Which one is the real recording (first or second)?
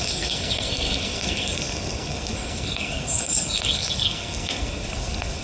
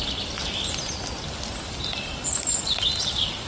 second